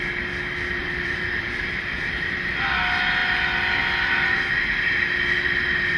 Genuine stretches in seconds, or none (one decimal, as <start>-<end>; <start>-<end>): 0.0-0.8; 2.5-6.0